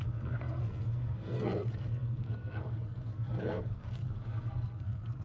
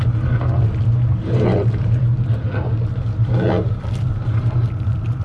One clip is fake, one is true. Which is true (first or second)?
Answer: second